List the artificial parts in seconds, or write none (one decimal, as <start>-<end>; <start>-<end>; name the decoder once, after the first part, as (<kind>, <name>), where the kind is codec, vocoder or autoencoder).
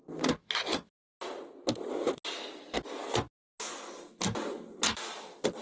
none